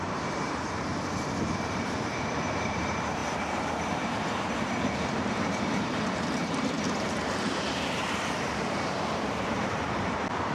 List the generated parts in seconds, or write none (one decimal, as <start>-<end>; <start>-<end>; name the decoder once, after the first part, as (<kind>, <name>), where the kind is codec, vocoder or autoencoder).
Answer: 0.0-0.9 (vocoder, BigVGAN v2); 1.7-10.5